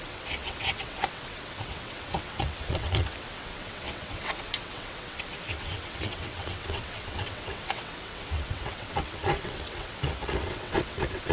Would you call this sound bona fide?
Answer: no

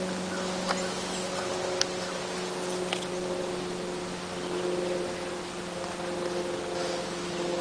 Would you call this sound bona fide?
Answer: yes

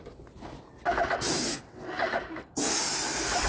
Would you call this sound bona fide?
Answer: yes